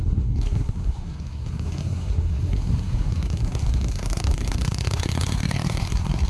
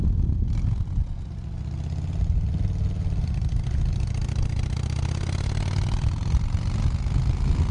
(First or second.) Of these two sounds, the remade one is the first